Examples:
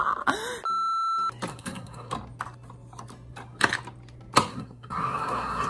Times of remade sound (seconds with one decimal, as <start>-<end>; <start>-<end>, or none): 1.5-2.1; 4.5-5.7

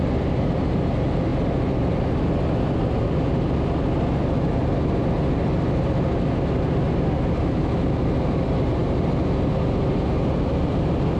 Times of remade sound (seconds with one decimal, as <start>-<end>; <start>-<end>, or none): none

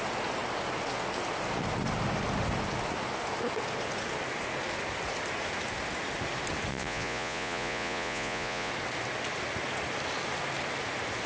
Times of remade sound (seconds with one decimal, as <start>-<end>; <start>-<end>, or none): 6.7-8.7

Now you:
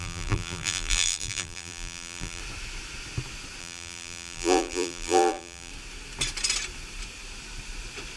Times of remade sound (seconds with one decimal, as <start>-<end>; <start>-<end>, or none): 0.0-2.4; 3.6-5.7

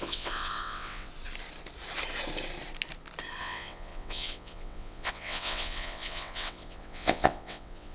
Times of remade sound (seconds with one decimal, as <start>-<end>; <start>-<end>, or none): 0.0-1.1; 3.4-7.9

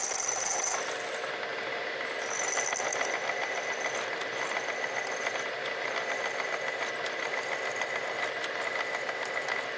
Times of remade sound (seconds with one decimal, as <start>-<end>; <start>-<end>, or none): none